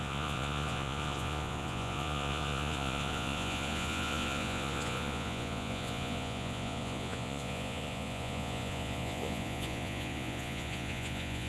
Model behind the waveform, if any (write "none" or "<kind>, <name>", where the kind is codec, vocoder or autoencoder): vocoder, Vocos